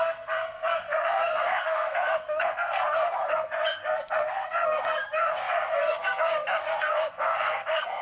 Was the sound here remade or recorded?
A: remade